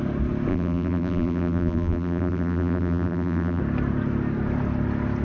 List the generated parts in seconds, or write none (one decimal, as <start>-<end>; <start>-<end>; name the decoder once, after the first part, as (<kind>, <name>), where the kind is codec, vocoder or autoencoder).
0.5-3.6 (vocoder, BigVGAN v2)